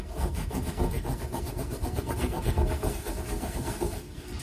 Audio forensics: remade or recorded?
remade